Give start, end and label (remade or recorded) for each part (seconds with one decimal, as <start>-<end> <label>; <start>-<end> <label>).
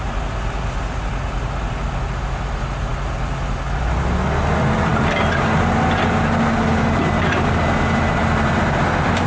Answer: 0.0-9.3 recorded